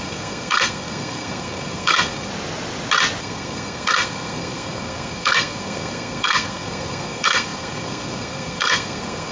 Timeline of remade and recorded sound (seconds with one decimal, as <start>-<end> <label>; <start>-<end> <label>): 0.0-2.3 remade; 2.3-3.2 recorded; 3.2-9.3 remade